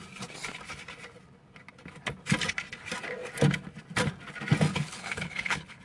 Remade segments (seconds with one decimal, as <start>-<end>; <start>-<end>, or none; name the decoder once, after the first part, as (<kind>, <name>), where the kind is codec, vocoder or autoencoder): 4.7-5.8 (codec, HILCodec)